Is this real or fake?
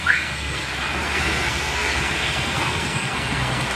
fake